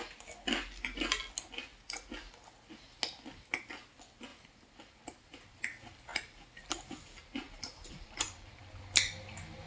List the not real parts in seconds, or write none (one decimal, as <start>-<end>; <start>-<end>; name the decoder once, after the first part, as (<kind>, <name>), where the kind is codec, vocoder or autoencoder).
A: 4.3-5.6 (vocoder, BigVGAN v2); 6.1-8.6